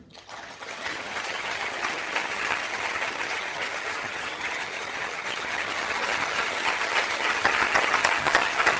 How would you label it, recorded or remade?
remade